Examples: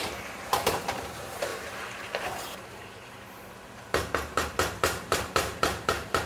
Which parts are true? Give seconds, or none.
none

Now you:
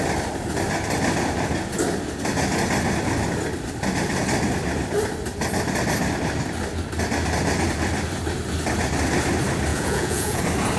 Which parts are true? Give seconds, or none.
0.0-9.7; 10.4-10.8

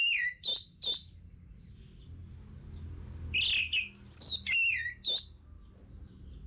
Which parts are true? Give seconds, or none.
0.0-6.5